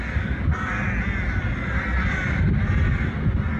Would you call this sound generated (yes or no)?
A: no